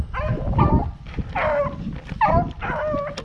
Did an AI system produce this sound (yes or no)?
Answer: no